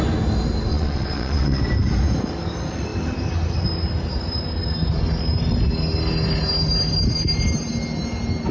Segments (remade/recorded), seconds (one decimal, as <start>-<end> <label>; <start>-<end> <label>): 0.0-0.7 recorded; 0.7-1.6 remade; 1.6-8.5 recorded